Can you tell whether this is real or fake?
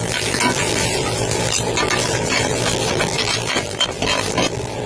fake